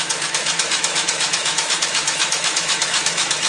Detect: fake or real fake